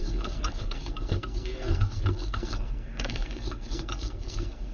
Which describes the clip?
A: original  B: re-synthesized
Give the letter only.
B